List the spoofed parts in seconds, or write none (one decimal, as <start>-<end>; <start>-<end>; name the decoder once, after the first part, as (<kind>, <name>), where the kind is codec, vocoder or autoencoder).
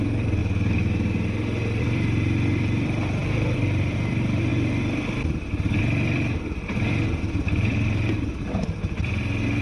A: 0.0-0.4 (vocoder, BigVGAN v2); 1.8-9.6